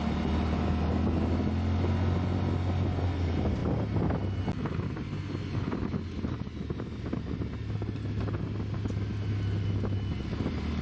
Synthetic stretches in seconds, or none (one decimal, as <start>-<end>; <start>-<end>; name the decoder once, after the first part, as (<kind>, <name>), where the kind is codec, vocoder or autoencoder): none